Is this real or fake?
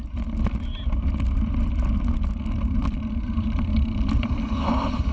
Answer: real